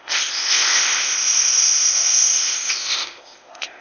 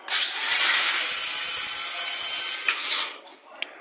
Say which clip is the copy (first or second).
first